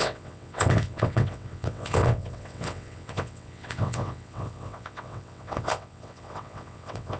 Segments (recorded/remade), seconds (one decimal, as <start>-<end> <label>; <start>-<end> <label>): 0.0-7.2 remade